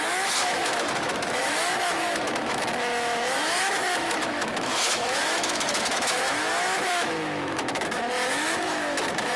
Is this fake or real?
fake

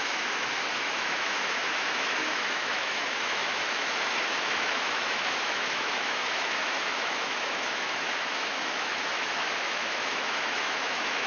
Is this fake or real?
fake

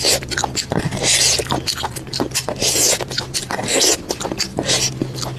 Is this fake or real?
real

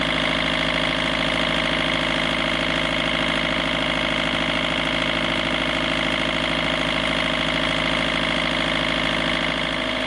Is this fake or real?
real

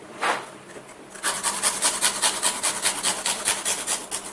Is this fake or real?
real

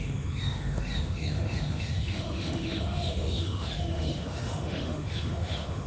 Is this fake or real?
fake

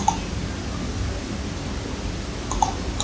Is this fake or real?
real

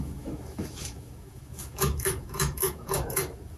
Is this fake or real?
fake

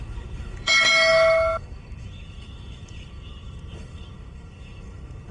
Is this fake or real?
fake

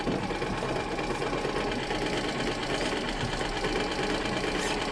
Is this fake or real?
real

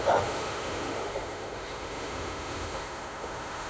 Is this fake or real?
fake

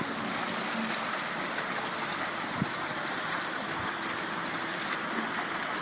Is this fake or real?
real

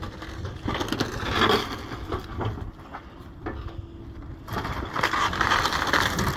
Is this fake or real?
real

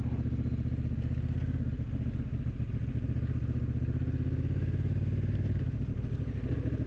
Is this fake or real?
real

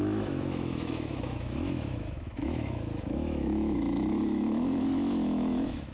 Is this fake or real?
fake